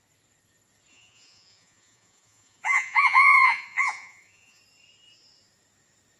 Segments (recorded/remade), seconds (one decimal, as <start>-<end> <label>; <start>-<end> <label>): 0.0-0.9 recorded; 0.9-4.6 remade; 4.6-6.2 recorded